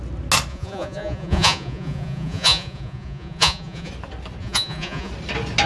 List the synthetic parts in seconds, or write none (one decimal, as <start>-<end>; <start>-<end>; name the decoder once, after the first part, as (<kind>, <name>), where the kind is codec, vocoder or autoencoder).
0.5-3.9 (vocoder, Vocos); 4.4-5.1